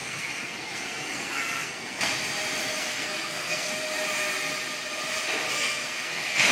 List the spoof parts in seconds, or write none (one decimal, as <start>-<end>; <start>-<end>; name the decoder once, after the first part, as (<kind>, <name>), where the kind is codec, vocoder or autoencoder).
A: 0.0-2.1 (codec, SNAC); 2.6-3.7; 5.5-6.5